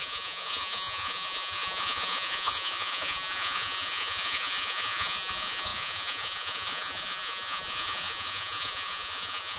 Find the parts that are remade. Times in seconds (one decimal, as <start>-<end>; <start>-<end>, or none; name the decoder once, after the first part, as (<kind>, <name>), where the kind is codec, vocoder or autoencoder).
0.0-9.6 (vocoder, Vocos)